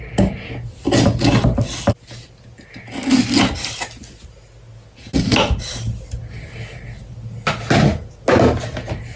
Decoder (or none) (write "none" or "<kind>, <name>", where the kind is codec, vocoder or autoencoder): none